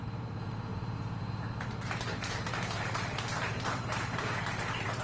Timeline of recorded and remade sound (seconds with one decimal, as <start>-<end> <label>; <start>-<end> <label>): 0.0-5.0 remade